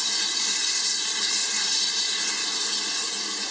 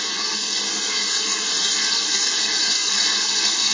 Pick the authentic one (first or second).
first